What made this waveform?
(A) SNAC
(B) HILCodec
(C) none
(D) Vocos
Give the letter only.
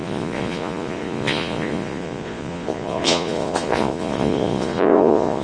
D